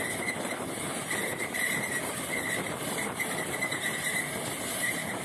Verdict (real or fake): fake